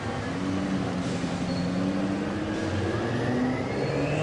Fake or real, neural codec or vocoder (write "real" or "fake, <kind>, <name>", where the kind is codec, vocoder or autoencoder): real